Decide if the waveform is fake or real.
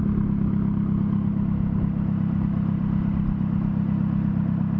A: real